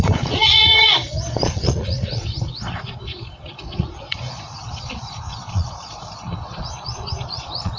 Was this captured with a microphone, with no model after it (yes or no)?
no